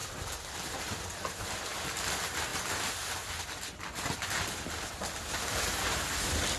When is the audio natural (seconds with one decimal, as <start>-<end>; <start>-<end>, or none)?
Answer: 0.9-2.5; 5.6-6.6